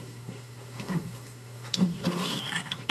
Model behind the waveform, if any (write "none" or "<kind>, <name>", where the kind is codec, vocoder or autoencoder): codec, SNAC